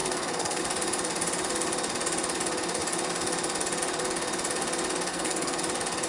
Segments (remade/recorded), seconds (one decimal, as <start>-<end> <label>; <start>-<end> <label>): 0.0-0.6 remade; 0.6-5.1 recorded; 5.1-5.6 remade; 5.6-6.1 recorded